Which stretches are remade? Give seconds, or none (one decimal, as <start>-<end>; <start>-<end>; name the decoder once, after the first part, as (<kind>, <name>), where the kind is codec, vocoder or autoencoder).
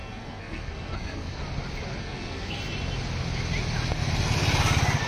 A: 0.0-1.4 (codec, SNAC); 2.0-2.6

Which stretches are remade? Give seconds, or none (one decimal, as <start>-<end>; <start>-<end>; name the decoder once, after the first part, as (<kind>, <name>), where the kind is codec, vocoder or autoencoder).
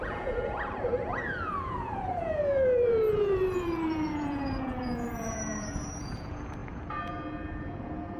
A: 0.0-8.2 (vocoder, Vocos)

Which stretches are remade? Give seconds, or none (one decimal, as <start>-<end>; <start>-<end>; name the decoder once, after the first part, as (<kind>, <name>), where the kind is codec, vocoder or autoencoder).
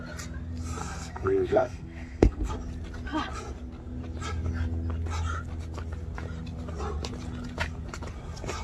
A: 0.8-2.5 (codec, SNAC)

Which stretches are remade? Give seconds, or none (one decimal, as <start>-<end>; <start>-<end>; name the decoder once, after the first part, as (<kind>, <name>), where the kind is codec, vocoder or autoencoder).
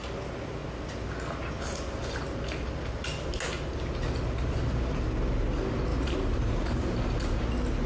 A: 5.9-7.4 (vocoder, BigVGAN v2)